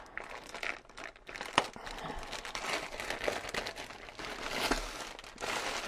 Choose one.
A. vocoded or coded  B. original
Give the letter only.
B